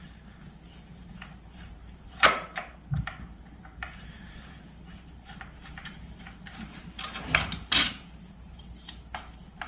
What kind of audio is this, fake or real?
fake